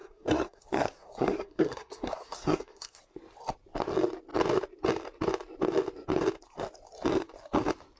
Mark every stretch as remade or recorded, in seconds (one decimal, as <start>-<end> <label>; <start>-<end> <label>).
0.0-3.0 remade; 3.0-8.0 recorded

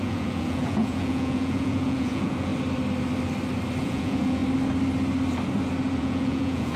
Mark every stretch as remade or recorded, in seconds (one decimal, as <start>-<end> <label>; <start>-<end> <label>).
0.0-2.5 remade; 2.5-3.8 recorded; 3.8-4.4 remade; 4.4-6.0 recorded; 6.0-6.8 remade

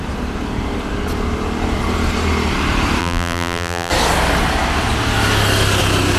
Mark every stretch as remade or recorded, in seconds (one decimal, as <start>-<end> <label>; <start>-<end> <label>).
0.0-3.0 recorded; 3.0-3.9 remade; 3.9-6.2 recorded

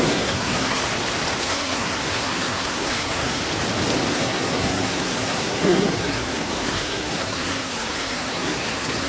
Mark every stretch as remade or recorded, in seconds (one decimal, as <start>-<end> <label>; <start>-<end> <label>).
0.0-0.8 remade; 0.8-1.4 recorded; 1.4-3.4 remade; 3.4-4.1 recorded; 4.1-9.1 remade

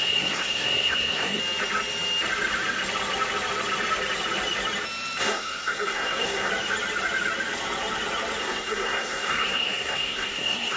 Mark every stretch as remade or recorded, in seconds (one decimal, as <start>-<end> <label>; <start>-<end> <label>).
0.0-1.4 remade; 1.4-5.2 recorded; 5.2-6.5 remade; 6.5-8.4 recorded; 8.4-10.8 remade

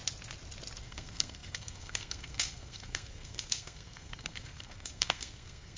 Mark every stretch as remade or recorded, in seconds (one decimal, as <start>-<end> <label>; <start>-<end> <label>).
0.0-0.8 recorded; 0.8-5.8 remade

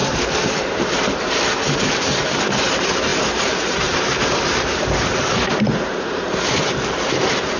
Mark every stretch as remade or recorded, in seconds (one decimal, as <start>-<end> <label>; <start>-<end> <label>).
0.0-7.6 remade